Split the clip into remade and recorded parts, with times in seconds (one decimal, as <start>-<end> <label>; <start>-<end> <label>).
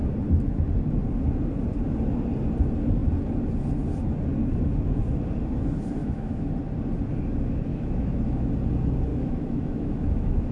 0.0-6.0 recorded; 6.0-6.5 remade; 6.5-7.7 recorded; 7.7-8.5 remade; 8.5-9.1 recorded; 9.1-10.5 remade